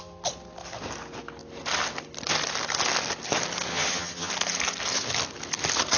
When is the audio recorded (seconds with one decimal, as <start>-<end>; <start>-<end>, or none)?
0.0-3.7; 4.3-6.0